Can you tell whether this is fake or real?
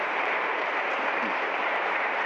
fake